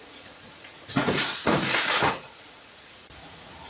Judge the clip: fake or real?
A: fake